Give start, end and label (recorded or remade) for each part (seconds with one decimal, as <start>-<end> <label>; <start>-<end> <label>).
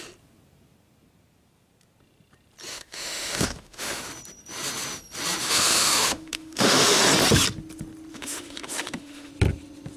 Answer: 0.0-2.7 recorded; 2.7-4.1 remade; 4.1-5.4 recorded; 5.4-7.0 remade; 7.0-8.1 recorded; 8.1-9.3 remade; 9.3-10.0 recorded